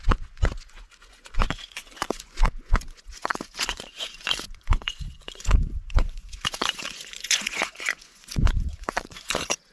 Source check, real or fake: fake